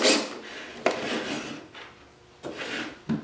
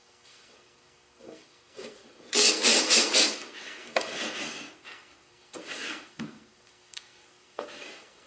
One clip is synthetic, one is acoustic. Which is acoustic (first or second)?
first